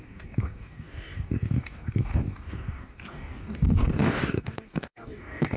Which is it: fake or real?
fake